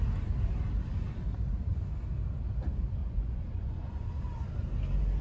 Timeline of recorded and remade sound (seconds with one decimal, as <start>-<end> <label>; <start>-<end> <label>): 0.0-3.0 recorded; 3.0-4.2 remade; 4.2-5.2 recorded